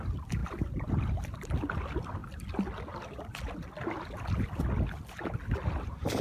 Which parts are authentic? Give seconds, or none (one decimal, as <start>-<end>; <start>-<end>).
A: 0.0-0.4; 1.7-6.2